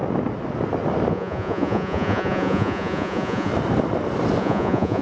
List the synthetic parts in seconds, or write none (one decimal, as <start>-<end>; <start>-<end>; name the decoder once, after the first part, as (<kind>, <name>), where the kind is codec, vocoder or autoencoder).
1.1-3.5 (vocoder, Vocos); 4.4-5.0